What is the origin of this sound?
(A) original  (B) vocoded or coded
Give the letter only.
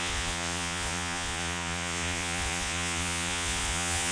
B